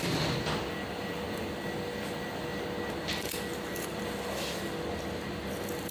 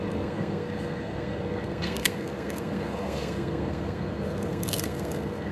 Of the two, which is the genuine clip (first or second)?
first